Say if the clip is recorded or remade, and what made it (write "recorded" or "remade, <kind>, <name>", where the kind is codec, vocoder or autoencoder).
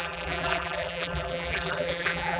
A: remade, vocoder, BigVGAN v2